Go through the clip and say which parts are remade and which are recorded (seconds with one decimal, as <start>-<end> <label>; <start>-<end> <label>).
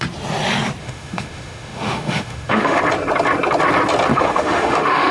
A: 0.0-0.8 recorded; 0.8-2.8 remade; 2.8-4.1 recorded; 4.1-5.1 remade